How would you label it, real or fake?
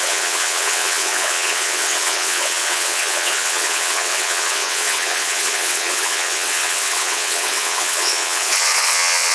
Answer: fake